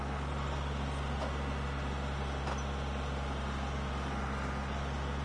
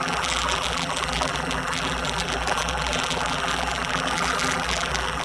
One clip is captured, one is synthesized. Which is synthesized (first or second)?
second